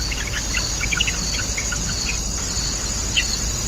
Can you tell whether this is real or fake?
real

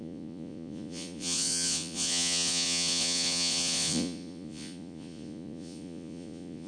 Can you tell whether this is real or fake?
fake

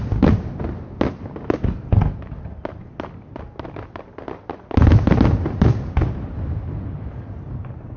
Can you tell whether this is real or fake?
real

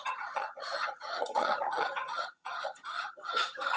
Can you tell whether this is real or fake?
fake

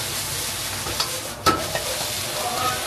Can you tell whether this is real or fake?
real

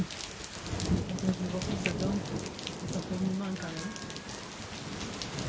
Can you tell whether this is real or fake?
real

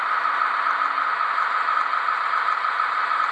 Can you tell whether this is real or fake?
real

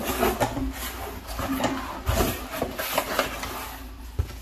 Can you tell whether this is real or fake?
real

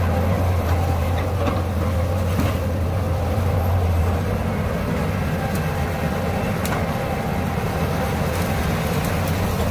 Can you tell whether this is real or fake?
real